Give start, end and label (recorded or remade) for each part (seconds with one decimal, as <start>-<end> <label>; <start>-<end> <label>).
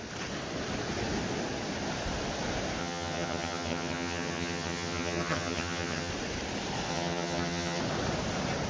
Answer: 0.0-2.8 recorded; 2.8-6.1 remade; 6.1-6.9 recorded; 6.9-7.8 remade; 7.8-8.7 recorded